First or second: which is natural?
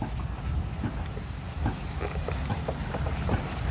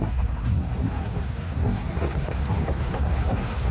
first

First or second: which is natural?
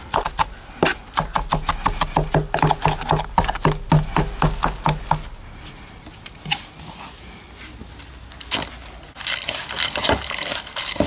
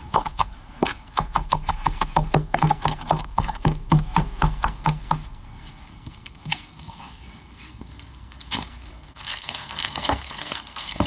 first